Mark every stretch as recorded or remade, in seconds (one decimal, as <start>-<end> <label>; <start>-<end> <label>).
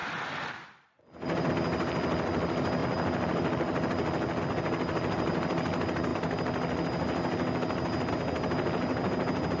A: 0.0-1.5 remade; 1.5-9.6 recorded